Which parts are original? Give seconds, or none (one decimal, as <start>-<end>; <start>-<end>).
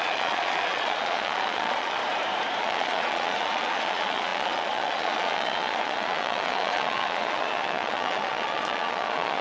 2.0-2.6